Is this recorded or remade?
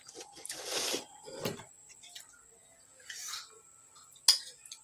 recorded